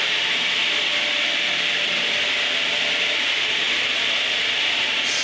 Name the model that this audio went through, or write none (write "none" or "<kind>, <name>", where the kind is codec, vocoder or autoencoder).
none